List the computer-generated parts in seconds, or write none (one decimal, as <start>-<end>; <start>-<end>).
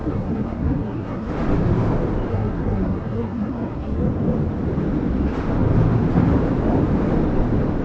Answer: 0.0-1.3; 2.3-4.1